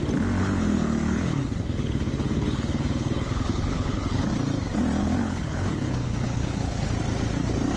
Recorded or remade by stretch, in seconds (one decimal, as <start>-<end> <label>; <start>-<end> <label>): 0.0-0.4 recorded; 0.4-4.2 remade; 4.2-5.0 recorded; 5.0-6.9 remade; 6.9-7.8 recorded

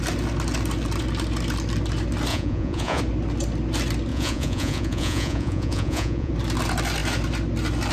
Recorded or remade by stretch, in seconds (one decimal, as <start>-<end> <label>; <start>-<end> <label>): 0.0-2.3 recorded; 2.3-3.0 remade; 3.0-4.1 recorded; 4.1-6.3 remade; 6.3-7.9 recorded